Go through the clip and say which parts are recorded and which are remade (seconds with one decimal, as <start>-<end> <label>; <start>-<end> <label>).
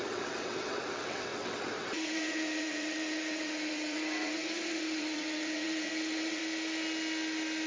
0.0-6.4 remade; 6.4-7.7 recorded